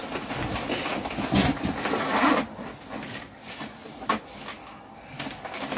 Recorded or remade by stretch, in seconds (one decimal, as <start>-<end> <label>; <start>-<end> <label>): 0.0-5.8 recorded